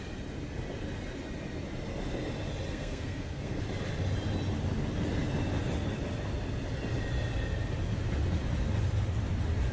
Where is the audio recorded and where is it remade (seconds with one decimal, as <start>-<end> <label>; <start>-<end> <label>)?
0.0-2.7 recorded; 2.7-3.6 remade; 3.6-9.7 recorded